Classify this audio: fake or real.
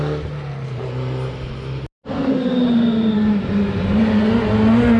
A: real